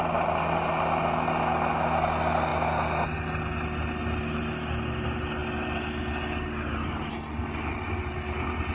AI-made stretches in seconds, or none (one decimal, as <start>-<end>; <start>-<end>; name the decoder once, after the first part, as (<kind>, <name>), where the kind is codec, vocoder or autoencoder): none